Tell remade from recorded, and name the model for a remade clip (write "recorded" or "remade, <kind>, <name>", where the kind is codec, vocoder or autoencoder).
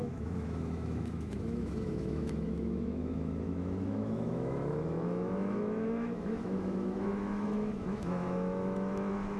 remade, autoencoder, DAC-VAE